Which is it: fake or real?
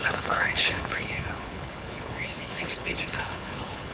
fake